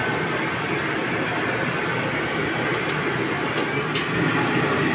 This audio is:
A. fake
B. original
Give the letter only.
B